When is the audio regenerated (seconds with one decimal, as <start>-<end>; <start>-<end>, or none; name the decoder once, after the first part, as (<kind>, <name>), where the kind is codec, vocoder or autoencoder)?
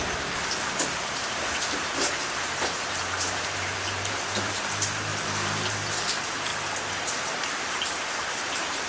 0.0-6.5 (vocoder, BigVGAN v2); 7.4-8.9